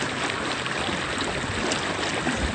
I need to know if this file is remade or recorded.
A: recorded